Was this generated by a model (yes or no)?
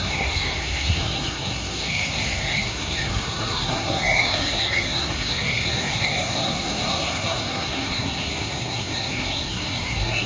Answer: yes